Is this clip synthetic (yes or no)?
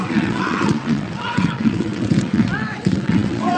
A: yes